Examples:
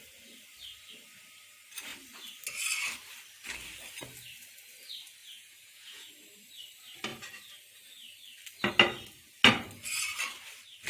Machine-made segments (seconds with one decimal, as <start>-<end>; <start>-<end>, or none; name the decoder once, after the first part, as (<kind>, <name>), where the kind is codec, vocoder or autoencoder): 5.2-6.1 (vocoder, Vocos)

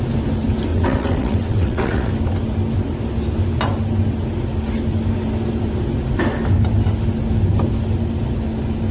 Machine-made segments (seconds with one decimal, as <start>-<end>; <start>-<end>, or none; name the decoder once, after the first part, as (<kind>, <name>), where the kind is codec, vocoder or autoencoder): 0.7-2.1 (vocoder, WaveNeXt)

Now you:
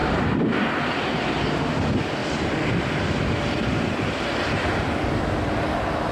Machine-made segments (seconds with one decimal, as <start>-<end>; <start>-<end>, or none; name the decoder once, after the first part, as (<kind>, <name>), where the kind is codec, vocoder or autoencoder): 0.0-1.3 (vocoder, BigVGAN v2); 2.2-5.1

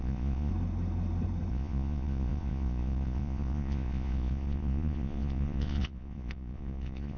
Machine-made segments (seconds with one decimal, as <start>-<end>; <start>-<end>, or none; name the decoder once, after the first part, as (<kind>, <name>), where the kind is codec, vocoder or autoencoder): 0.0-0.5 (vocoder, Vocos); 1.5-7.2